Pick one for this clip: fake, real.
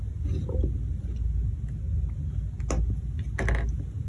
real